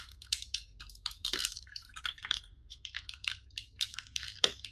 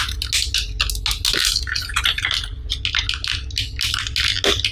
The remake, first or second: first